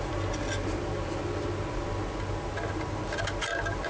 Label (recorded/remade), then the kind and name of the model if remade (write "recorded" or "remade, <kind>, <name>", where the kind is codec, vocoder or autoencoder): recorded